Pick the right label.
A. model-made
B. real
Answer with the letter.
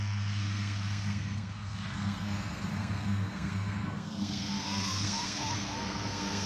A